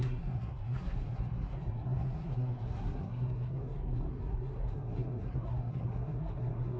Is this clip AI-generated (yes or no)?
yes